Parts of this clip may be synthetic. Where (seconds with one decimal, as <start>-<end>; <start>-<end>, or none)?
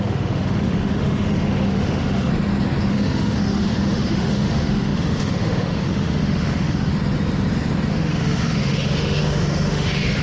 0.0-2.3; 2.9-6.9; 7.9-10.2